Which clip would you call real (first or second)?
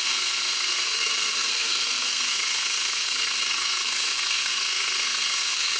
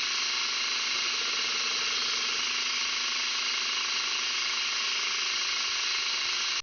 second